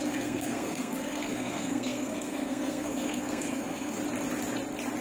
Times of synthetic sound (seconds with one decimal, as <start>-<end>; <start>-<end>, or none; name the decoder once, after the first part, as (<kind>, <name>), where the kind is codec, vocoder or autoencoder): 0.0-4.0 (codec, SNAC)